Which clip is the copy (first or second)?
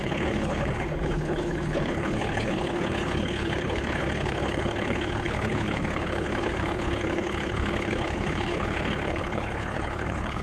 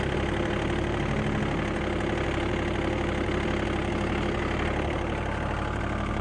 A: first